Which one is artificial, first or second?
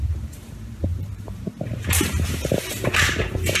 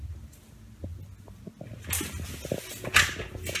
first